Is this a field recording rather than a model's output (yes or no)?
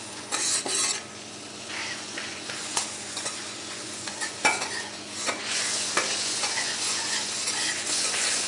no